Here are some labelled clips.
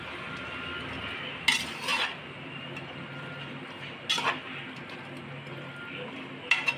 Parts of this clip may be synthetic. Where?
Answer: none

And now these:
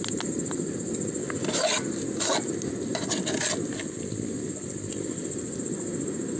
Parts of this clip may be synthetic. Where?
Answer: none

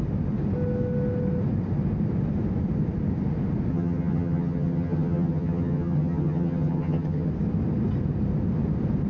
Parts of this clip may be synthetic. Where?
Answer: 3.7-7.3 (vocoder, HiFi-GAN)